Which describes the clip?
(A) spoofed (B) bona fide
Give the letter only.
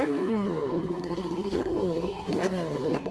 A